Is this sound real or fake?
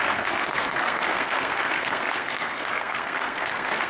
fake